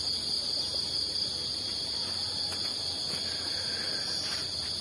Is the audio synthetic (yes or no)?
no